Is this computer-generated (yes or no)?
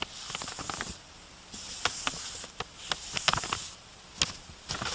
no